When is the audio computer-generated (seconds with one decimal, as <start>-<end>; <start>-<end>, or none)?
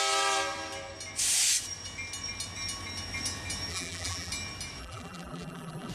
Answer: 3.7-4.3; 4.8-5.9